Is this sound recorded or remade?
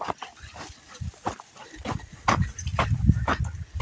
remade